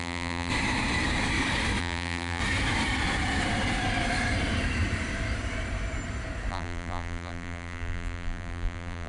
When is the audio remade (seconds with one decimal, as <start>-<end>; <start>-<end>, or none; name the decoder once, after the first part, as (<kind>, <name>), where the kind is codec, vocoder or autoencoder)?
0.0-0.5 (vocoder, BigVGAN v2); 1.8-2.4; 6.5-9.1